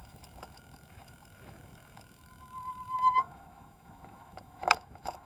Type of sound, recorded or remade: remade